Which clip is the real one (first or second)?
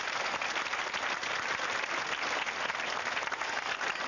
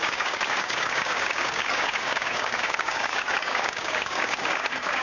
first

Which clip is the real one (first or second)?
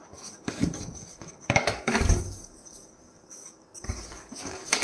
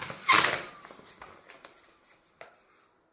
second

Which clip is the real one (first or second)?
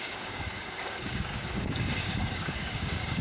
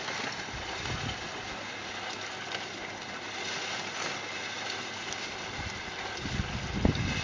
second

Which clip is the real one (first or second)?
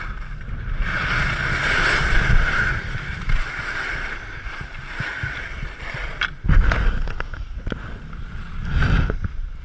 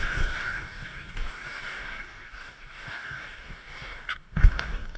first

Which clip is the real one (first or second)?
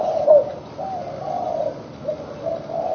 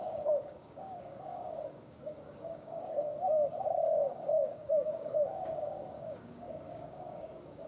first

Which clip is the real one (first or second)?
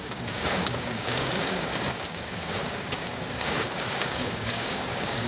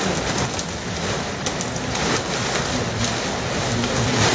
second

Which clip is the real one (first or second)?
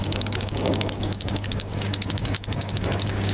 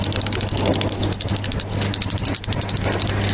second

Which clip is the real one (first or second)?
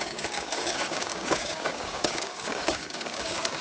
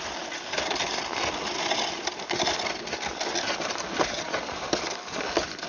second